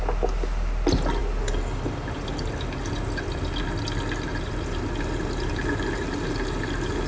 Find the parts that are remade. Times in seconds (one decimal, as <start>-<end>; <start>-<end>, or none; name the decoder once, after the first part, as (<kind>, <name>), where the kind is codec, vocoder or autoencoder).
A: none